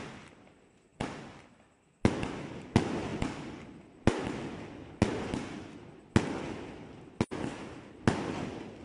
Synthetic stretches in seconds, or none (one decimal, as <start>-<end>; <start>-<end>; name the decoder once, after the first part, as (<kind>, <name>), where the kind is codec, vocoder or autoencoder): none